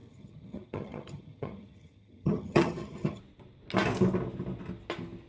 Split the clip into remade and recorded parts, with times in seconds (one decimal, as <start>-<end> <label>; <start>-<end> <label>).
0.0-3.2 remade; 3.2-5.3 recorded